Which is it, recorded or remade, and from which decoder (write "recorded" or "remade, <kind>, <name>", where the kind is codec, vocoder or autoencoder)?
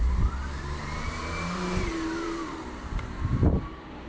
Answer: remade, vocoder, BigVGAN v2